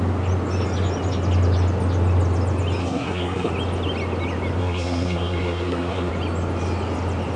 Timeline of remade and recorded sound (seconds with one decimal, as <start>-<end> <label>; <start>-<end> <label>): 0.0-2.8 recorded; 2.8-3.5 remade; 3.5-4.6 recorded; 4.6-6.1 remade; 6.1-7.4 recorded

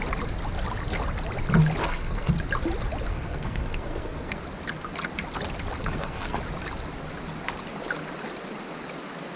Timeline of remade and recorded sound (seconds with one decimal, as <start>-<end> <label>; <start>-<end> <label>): 0.0-1.8 recorded; 1.8-2.3 remade; 2.3-3.1 recorded; 3.1-4.4 remade; 4.4-5.8 recorded; 5.8-6.4 remade; 6.4-9.4 recorded

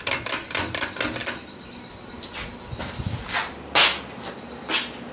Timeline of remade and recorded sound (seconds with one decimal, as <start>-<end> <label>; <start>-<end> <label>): 0.0-5.1 recorded

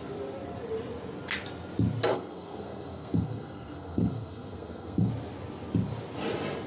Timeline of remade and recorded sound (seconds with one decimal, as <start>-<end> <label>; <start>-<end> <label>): 0.0-2.1 recorded; 2.1-5.1 remade; 5.1-6.7 recorded

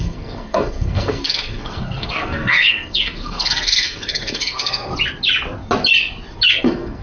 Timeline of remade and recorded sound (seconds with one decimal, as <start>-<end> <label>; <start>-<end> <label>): 0.0-4.9 remade; 4.9-6.5 recorded; 6.5-7.0 remade

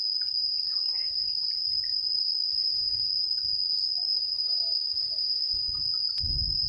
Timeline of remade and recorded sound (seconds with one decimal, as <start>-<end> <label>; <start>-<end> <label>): 0.0-0.7 recorded; 0.7-1.3 remade; 1.3-2.5 recorded; 2.5-3.1 remade; 3.1-4.1 recorded; 4.1-5.8 remade; 5.8-6.7 recorded

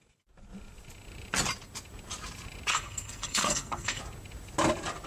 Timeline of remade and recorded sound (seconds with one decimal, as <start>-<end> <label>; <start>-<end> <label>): 0.0-2.7 recorded; 2.7-4.0 remade; 4.0-5.1 recorded

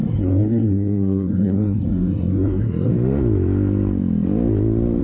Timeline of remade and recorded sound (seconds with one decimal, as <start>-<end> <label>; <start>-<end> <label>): 0.0-2.9 remade; 2.9-5.0 recorded